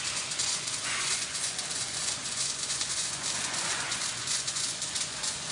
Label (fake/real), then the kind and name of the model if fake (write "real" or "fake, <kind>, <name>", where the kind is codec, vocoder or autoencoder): fake, vocoder, Vocos